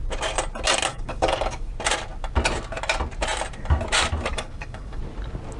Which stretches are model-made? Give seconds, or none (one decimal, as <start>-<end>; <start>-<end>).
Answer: 0.9-1.7; 4.3-5.0